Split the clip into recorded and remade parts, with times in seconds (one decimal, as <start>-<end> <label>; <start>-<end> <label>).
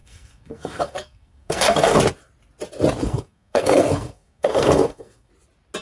0.0-2.0 remade; 2.0-3.0 recorded; 3.0-5.3 remade; 5.3-5.8 recorded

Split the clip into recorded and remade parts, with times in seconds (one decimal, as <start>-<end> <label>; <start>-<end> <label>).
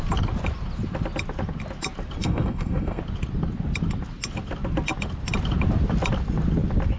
0.0-2.2 recorded; 2.2-3.0 remade; 3.0-7.0 recorded